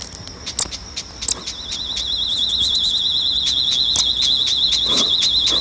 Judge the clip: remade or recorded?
recorded